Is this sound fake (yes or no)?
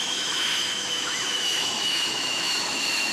yes